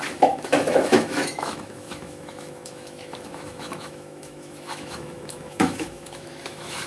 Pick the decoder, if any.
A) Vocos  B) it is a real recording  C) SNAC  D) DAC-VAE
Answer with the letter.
D